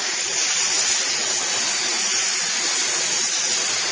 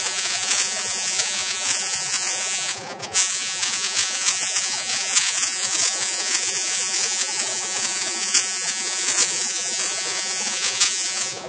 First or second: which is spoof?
second